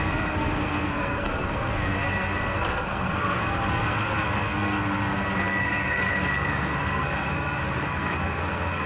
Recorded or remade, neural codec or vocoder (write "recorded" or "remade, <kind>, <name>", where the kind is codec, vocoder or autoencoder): remade, codec, SNAC